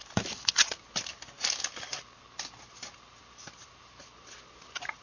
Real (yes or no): yes